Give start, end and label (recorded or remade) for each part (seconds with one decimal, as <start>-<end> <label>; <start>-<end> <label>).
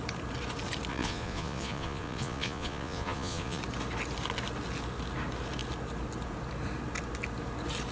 0.0-0.9 recorded; 0.9-3.6 remade; 3.6-7.9 recorded